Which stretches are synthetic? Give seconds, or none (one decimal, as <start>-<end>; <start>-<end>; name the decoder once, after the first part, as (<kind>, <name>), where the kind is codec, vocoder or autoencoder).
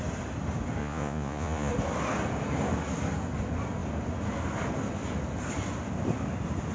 0.8-1.7 (vocoder, Vocos)